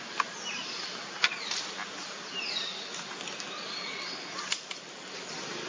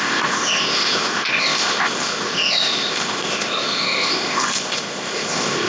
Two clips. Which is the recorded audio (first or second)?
first